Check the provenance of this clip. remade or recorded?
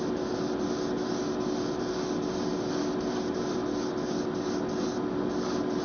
recorded